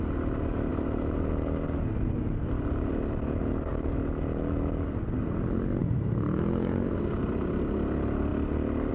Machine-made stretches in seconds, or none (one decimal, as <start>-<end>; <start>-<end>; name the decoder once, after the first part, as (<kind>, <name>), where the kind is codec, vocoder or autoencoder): 0.7-1.3 (vocoder, BigVGAN v2); 5.8-7.5